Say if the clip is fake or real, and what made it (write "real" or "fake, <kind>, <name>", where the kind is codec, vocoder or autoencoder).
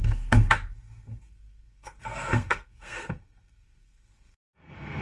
fake, codec, SNAC